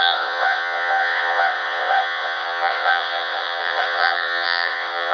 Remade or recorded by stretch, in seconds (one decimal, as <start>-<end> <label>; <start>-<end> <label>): 0.0-5.1 remade